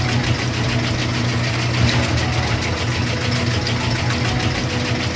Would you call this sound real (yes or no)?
yes